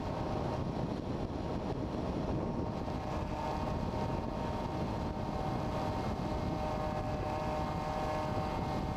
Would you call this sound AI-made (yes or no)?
no